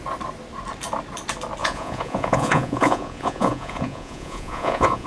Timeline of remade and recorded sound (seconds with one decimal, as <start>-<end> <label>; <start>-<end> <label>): 0.0-1.6 recorded; 1.6-5.1 remade